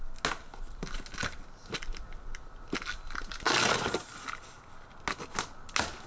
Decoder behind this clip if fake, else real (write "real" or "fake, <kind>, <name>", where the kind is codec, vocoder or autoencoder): real